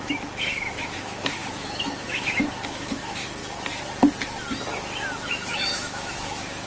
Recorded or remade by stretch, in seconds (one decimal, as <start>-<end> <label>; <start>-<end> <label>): 0.0-3.4 remade; 3.4-5.3 recorded; 5.3-6.7 remade